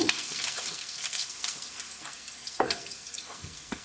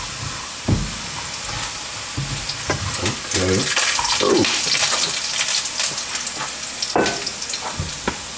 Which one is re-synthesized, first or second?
first